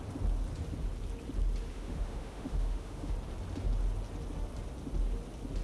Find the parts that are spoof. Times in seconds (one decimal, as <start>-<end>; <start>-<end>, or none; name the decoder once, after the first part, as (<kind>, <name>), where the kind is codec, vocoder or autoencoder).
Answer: 1.7-3.1 (autoencoder, DAC-VAE)